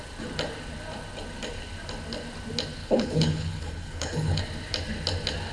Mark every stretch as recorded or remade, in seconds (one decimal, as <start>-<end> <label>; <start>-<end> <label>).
0.0-2.8 recorded; 2.8-4.4 remade; 4.4-5.5 recorded